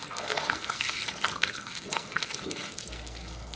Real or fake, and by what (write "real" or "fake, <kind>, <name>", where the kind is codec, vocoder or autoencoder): fake, codec, SNAC